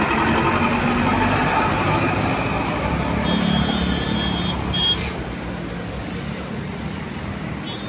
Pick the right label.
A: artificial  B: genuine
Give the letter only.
B